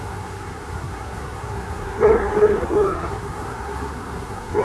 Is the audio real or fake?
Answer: fake